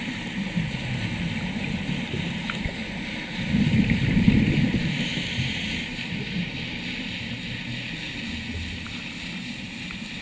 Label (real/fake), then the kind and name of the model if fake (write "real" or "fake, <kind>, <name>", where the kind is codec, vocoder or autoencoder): real